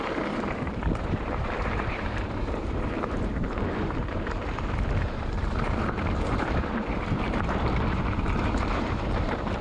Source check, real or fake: fake